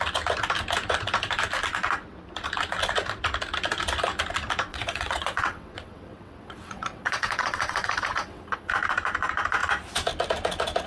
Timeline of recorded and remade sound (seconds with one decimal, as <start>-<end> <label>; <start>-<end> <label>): 0.0-4.7 recorded; 4.7-8.7 remade; 8.7-10.9 recorded